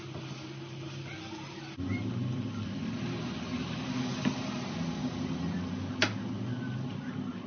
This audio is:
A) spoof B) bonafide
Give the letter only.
B